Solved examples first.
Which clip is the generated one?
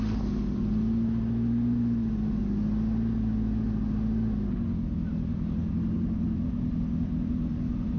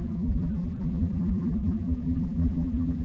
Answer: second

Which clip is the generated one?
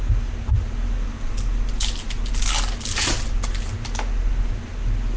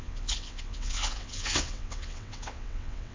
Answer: second